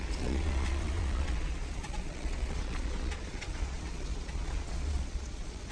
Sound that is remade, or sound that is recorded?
remade